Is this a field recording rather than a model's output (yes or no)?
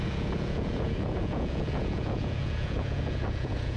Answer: no